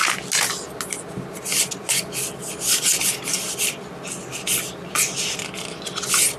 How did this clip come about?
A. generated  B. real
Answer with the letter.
B